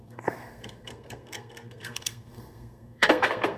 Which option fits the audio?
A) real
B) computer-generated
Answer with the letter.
B